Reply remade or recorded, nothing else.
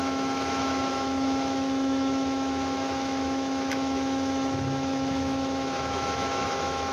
remade